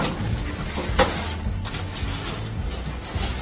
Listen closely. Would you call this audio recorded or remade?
recorded